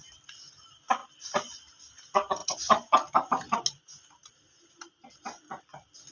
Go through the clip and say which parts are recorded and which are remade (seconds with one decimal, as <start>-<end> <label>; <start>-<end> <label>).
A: 0.0-6.1 recorded